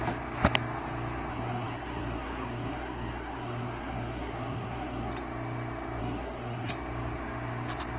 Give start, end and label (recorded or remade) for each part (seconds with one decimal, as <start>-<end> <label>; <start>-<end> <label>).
0.0-1.3 recorded; 1.3-5.1 remade; 5.1-6.0 recorded; 6.0-6.7 remade; 6.7-8.0 recorded